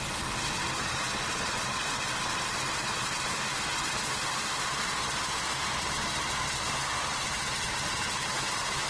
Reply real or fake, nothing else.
real